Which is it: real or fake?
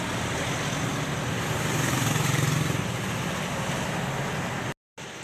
real